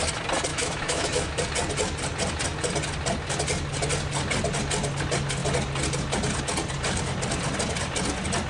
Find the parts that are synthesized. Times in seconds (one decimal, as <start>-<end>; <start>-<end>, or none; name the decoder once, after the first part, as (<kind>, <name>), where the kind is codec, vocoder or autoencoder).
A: 0.5-1.4 (autoencoder, DAC-VAE)